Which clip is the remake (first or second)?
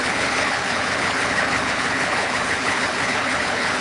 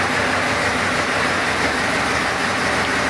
first